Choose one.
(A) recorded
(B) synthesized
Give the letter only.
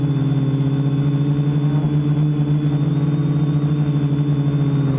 A